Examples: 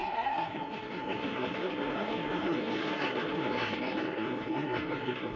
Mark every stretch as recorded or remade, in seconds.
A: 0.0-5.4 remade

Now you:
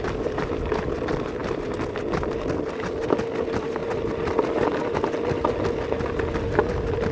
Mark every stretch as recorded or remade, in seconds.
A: 0.0-7.1 recorded

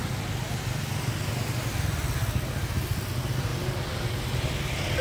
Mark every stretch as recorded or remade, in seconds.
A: 0.0-5.0 recorded